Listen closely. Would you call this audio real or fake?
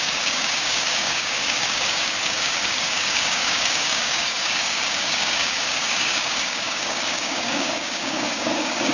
fake